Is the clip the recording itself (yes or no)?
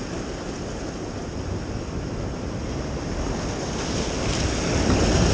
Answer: yes